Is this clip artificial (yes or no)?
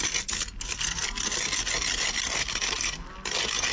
no